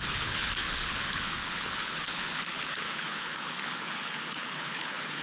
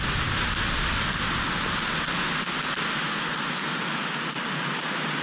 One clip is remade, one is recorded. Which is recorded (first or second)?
second